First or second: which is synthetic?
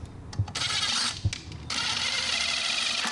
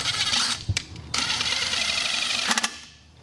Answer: second